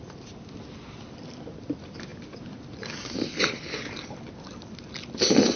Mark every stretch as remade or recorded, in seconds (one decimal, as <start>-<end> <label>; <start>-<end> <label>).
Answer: 0.0-5.6 recorded